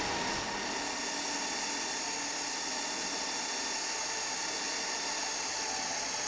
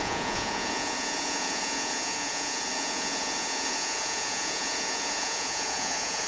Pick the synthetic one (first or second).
second